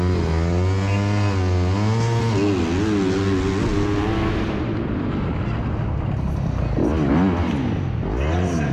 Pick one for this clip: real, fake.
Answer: real